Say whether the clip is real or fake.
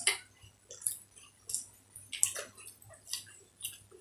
real